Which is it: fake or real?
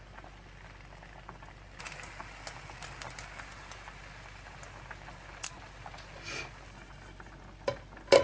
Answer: real